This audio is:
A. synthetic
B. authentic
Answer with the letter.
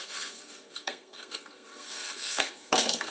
A